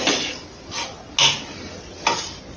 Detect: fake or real real